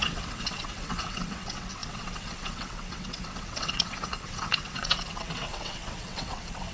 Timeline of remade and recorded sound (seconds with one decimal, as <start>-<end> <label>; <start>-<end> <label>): 0.0-6.7 remade